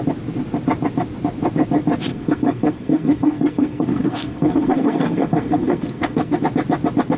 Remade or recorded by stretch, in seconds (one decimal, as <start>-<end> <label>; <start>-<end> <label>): 0.0-2.1 recorded; 2.1-6.4 remade; 6.4-7.2 recorded